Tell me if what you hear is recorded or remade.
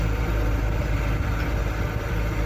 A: recorded